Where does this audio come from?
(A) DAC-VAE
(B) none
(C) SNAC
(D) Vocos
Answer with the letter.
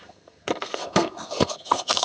C